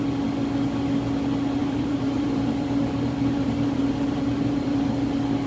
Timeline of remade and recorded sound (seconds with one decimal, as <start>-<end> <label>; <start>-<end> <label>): 0.0-1.6 recorded; 1.6-4.9 remade; 4.9-5.5 recorded